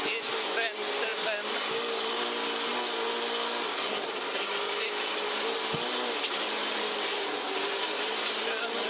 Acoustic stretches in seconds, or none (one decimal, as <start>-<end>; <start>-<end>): 0.0-6.6; 8.1-8.9